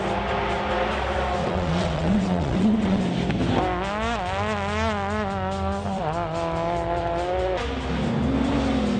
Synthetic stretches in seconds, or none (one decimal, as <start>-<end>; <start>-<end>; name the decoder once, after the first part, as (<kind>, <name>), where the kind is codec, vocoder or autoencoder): 1.4-3.0 (vocoder, WaveNeXt)